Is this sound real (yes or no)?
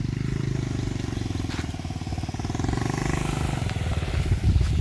yes